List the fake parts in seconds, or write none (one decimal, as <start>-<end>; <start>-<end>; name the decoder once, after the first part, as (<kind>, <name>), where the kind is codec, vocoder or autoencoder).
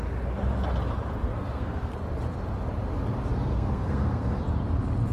1.2-1.9 (codec, SNAC); 3.5-4.4